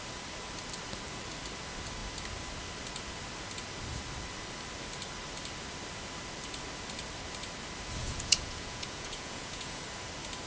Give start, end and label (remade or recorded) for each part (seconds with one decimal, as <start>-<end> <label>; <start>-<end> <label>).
0.0-8.0 recorded; 8.0-9.8 remade; 9.8-10.5 recorded